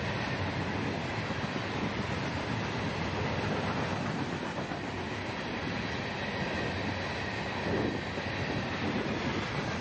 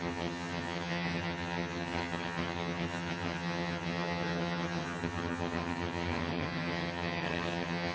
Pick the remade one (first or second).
second